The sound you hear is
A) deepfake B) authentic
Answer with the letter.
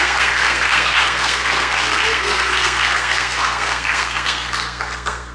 A